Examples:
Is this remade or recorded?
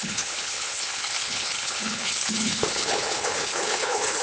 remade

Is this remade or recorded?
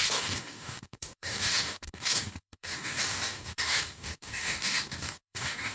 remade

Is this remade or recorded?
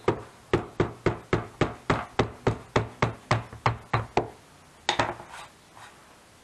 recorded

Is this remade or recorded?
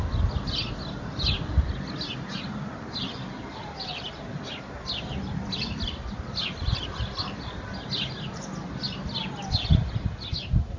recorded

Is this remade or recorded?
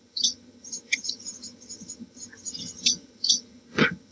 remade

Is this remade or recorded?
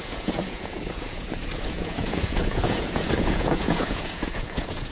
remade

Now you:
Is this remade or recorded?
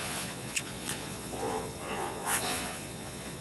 remade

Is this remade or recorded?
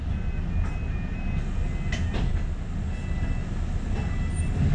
recorded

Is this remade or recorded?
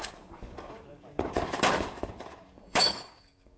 remade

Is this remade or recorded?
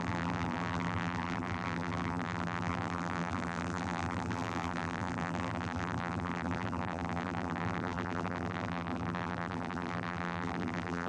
remade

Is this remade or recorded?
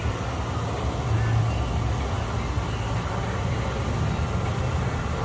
recorded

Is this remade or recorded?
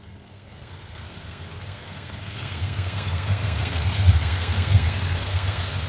remade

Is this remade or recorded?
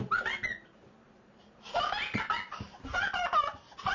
recorded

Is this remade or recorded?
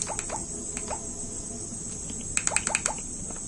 recorded